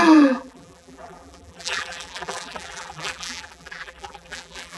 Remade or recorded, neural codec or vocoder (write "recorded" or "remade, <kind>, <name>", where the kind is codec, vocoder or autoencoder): remade, vocoder, BigVGAN v2